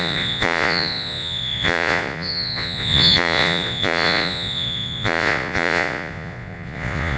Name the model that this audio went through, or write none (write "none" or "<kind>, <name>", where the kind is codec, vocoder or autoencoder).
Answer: vocoder, Vocos